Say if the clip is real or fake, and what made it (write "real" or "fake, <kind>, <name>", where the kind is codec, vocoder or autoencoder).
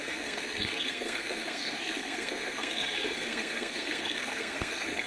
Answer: fake, codec, SNAC